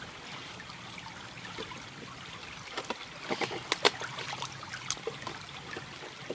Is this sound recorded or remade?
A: recorded